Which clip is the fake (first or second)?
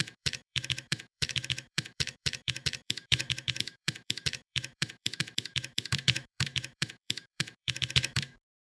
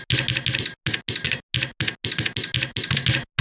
first